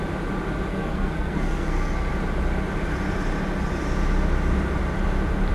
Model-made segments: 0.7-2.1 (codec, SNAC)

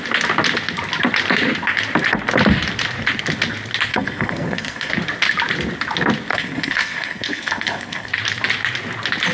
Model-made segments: 3.9-4.9 (codec, SNAC); 6.3-8.1

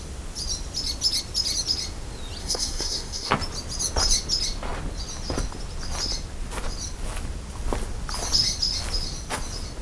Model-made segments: 2.4-3.3 (codec, SNAC)

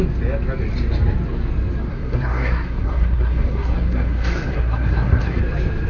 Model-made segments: 1.9-5.4 (codec, SNAC)